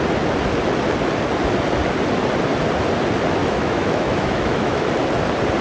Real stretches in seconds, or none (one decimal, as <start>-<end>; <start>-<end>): 0.0-3.4; 4.9-5.6